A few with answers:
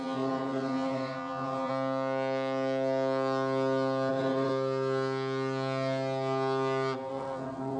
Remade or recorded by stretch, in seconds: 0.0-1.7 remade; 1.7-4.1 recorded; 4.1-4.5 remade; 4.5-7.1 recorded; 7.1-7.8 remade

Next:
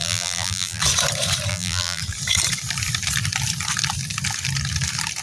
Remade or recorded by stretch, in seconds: 0.0-0.8 remade; 0.8-1.5 recorded; 1.5-2.0 remade; 2.0-5.2 recorded